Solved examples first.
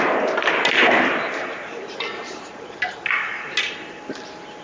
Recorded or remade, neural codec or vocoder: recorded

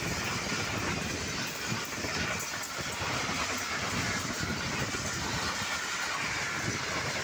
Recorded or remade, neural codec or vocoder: recorded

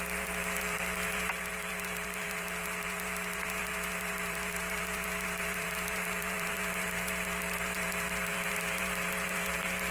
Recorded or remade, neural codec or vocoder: remade, vocoder, BigVGAN v2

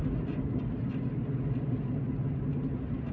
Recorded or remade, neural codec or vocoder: recorded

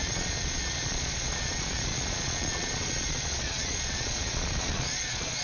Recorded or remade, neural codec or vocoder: remade, vocoder, Vocos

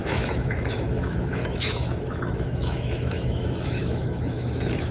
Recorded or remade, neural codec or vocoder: remade, autoencoder, DAC-VAE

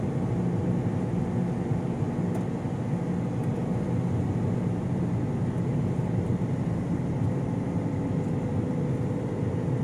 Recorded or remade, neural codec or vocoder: recorded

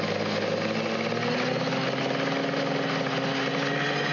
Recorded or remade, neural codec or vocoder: recorded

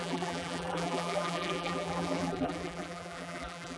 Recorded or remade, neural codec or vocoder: remade, vocoder, BigVGAN v2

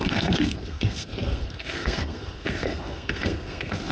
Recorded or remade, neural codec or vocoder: remade, codec, SNAC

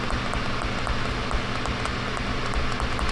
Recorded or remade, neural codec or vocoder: recorded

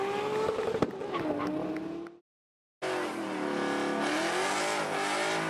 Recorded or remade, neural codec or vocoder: recorded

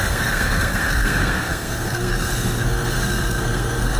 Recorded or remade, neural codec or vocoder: remade, codec, SNAC